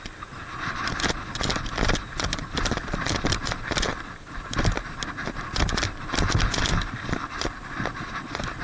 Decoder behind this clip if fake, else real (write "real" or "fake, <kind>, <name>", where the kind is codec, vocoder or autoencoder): real